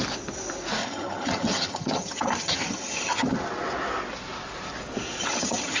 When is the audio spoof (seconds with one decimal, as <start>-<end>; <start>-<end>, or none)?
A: 0.8-3.3; 5.2-5.8